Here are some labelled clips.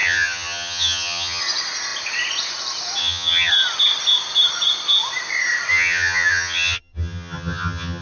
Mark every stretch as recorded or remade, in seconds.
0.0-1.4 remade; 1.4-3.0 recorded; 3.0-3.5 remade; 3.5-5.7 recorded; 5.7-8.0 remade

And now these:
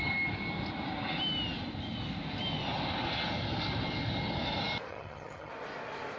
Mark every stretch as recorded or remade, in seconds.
0.0-4.9 recorded; 4.9-5.5 remade; 5.5-6.2 recorded

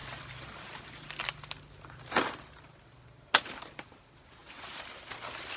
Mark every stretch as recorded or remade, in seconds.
0.0-5.6 recorded

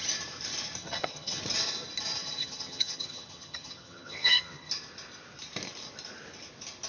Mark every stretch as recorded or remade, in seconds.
0.0-0.8 recorded; 0.8-1.4 remade; 1.4-2.2 recorded; 2.2-4.7 remade; 4.7-6.9 recorded

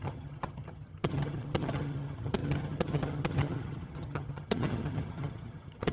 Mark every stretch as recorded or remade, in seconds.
0.0-5.9 remade

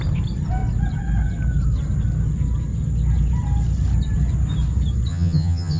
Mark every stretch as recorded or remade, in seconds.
0.0-5.1 recorded; 5.1-5.8 remade